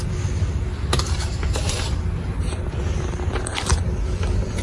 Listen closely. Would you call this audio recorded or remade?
remade